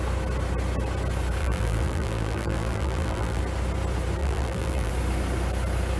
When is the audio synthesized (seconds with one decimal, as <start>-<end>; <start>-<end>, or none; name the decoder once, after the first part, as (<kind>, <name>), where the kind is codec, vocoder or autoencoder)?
1.4-3.4 (vocoder, BigVGAN v2); 4.2-4.9